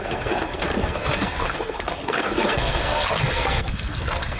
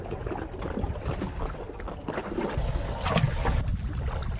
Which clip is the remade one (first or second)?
first